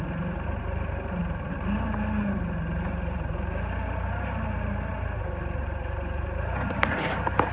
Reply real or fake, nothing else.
real